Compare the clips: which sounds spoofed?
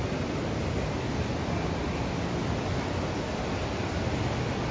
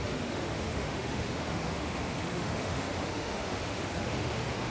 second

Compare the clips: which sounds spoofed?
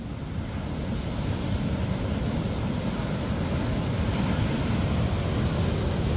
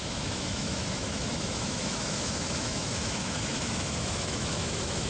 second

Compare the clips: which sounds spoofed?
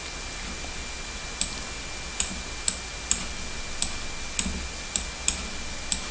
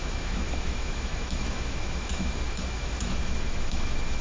second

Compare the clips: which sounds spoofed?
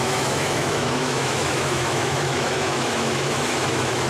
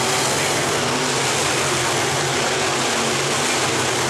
first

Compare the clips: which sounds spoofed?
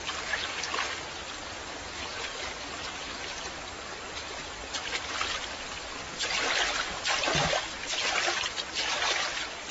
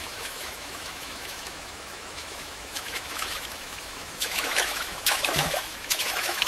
second